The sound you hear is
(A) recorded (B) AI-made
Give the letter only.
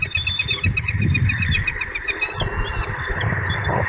A